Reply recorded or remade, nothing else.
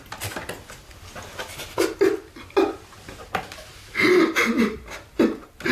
recorded